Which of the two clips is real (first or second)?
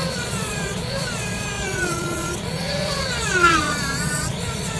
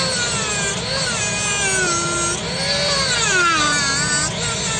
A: second